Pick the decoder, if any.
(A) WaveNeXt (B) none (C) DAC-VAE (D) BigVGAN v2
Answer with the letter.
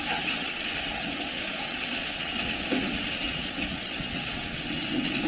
A